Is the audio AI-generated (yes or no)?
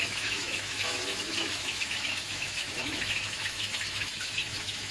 yes